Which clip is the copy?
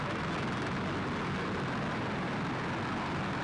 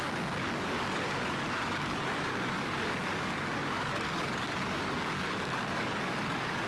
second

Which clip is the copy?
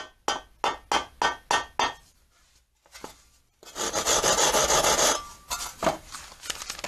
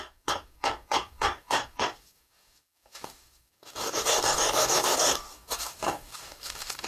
second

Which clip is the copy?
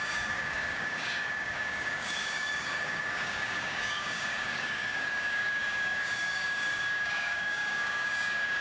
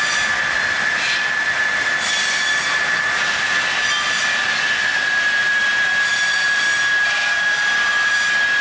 first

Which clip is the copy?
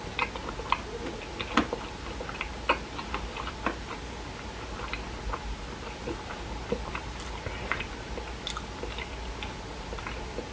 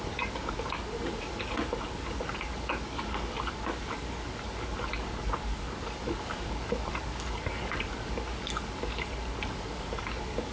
second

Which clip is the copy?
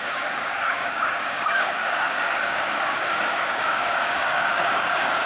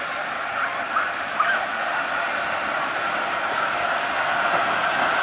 first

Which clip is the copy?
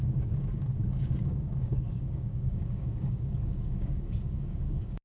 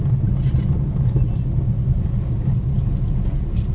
first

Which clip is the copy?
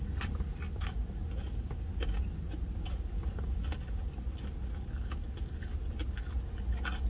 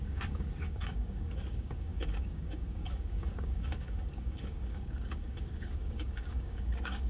second